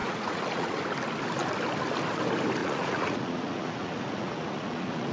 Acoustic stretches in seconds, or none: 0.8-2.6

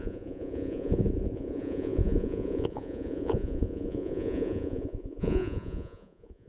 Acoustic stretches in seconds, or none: none

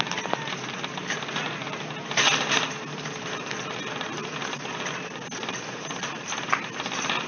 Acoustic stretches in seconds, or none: 0.0-7.3

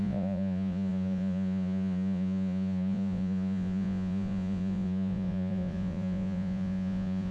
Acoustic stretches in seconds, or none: none

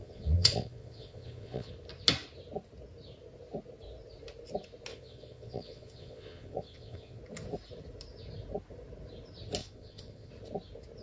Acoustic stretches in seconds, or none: 1.7-4.9; 7.2-9.6; 10.3-11.0

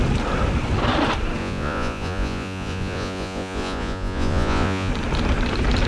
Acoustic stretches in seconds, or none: 0.0-1.4; 4.9-5.9

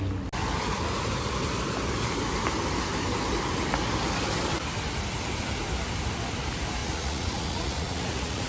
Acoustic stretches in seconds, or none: 0.0-6.8